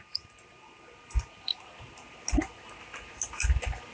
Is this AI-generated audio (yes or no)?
no